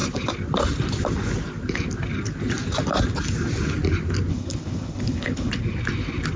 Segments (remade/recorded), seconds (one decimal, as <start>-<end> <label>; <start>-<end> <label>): 0.0-4.3 recorded; 4.3-5.5 remade; 5.5-6.4 recorded